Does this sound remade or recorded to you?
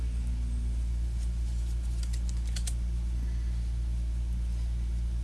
recorded